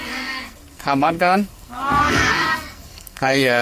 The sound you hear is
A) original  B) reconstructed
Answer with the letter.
B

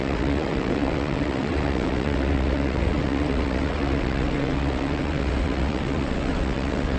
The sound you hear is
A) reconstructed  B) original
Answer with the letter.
A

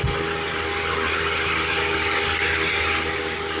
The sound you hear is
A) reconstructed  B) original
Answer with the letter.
B